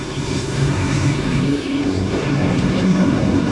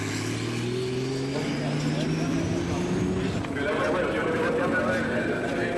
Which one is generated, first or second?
first